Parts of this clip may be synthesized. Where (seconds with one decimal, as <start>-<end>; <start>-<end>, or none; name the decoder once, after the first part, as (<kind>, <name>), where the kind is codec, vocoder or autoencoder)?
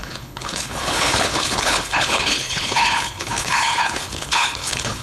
0.0-5.0 (codec, HILCodec)